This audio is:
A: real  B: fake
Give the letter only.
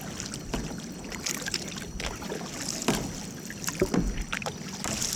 A